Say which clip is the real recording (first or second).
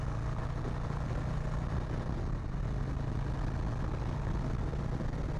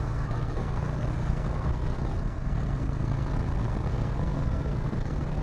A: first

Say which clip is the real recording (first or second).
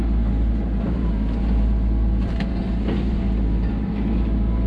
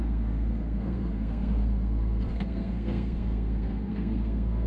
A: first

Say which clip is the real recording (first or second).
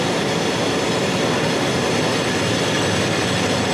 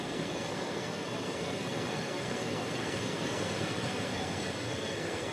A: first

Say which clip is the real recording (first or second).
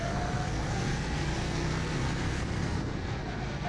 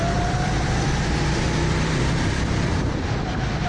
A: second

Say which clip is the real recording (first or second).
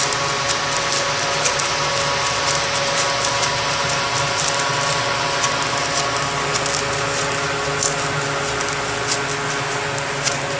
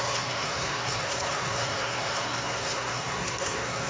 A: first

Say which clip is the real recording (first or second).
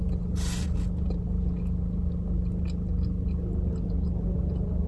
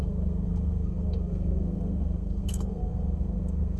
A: first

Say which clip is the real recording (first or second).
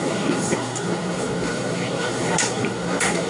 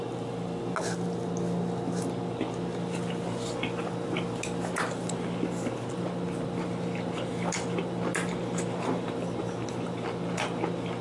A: second